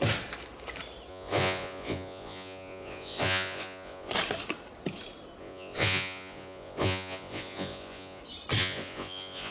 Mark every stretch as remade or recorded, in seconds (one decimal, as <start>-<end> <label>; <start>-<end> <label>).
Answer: 0.0-1.1 recorded; 1.1-4.1 remade; 4.1-5.4 recorded; 5.4-8.2 remade; 8.2-8.6 recorded; 8.6-9.5 remade